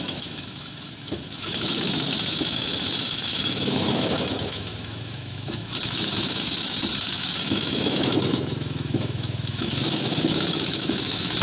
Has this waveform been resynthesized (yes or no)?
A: yes